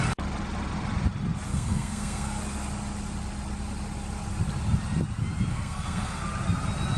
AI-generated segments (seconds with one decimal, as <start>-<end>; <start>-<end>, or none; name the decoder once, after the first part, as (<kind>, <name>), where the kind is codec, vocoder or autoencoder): 1.5-2.4 (codec, SNAC); 5.5-6.2